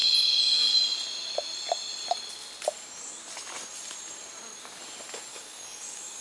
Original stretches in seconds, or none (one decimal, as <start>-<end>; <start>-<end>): 0.0-5.3